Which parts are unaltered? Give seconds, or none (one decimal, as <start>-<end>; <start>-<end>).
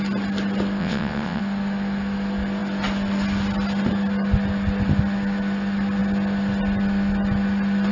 0.0-0.8; 1.4-7.9